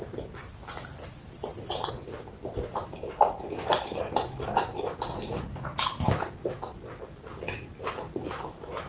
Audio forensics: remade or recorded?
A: recorded